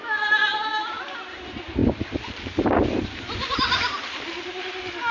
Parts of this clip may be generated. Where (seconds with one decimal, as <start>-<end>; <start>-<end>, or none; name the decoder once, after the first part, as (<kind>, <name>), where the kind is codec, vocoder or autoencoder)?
none